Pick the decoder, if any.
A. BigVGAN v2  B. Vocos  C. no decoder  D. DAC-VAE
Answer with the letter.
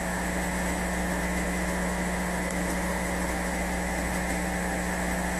D